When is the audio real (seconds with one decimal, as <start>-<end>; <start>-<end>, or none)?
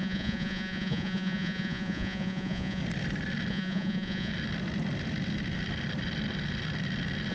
2.8-3.5; 4.3-7.3